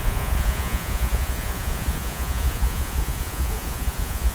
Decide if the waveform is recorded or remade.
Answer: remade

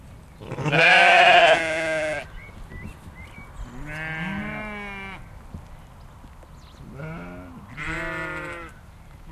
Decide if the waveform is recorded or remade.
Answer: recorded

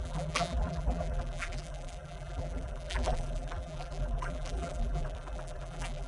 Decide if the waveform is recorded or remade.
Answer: remade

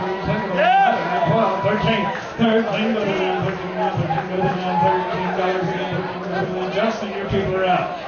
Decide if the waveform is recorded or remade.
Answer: recorded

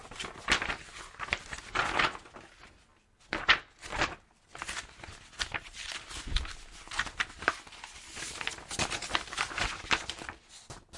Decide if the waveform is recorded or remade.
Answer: recorded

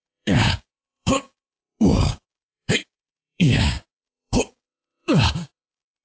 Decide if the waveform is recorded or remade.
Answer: remade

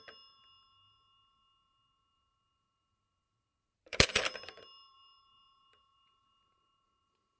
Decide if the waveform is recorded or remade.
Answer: remade